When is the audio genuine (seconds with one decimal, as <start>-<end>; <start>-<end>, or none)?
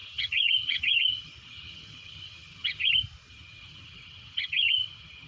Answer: 2.9-3.3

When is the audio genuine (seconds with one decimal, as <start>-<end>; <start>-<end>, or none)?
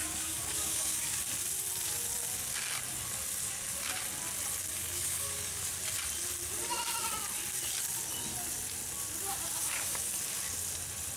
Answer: 1.2-4.7; 5.7-9.6; 10.1-11.2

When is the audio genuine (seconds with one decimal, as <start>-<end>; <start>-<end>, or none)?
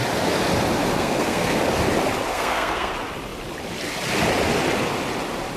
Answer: 0.0-0.8; 1.6-2.3; 2.9-5.6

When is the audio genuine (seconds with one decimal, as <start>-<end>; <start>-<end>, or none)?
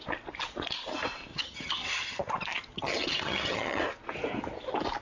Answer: 0.0-1.3; 2.2-2.7; 3.8-5.0